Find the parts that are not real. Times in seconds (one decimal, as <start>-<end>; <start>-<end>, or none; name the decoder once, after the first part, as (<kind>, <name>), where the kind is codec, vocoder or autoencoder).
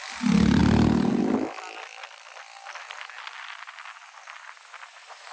none